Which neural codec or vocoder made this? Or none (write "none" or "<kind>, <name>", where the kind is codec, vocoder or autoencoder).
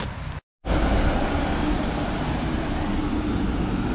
none